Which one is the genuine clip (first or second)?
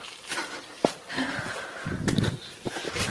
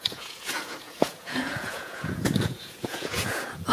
first